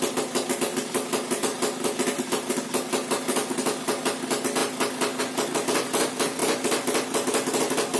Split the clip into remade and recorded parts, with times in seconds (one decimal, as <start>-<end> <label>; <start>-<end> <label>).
0.0-8.0 recorded